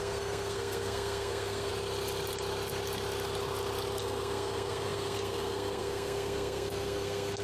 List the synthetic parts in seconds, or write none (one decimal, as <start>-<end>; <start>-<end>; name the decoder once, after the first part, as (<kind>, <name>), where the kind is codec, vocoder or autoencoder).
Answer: 0.0-1.7 (codec, SNAC); 4.0-7.4